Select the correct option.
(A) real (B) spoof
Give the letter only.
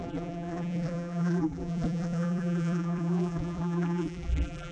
B